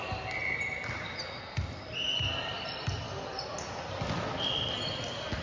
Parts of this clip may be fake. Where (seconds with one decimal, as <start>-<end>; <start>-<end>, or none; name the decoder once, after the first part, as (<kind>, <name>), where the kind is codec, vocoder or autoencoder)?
none

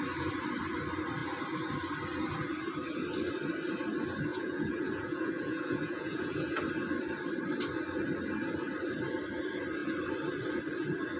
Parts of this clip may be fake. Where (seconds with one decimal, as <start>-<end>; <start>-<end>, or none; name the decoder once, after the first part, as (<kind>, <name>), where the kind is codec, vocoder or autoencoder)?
4.3-6.6 (vocoder, Vocos)